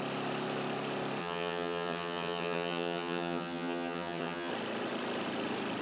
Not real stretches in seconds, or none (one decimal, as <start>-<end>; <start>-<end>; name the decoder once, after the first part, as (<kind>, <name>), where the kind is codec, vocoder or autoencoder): 1.2-4.5 (vocoder, HiFi-GAN)